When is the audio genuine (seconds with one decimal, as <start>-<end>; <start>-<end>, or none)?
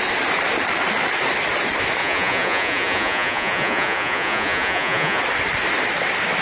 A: 0.0-2.0; 5.2-6.4